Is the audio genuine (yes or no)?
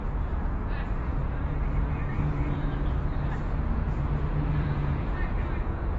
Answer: no